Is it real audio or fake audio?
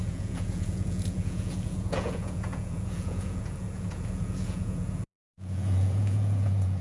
fake